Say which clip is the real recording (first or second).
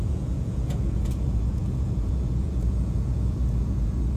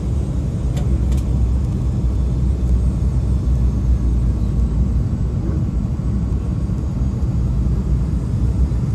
second